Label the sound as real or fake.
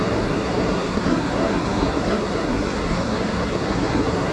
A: fake